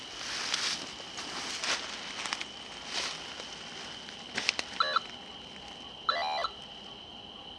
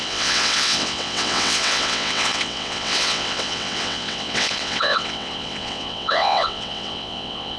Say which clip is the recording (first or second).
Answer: first